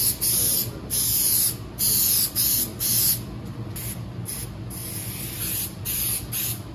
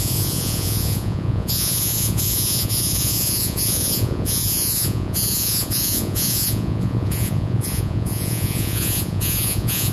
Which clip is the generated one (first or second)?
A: second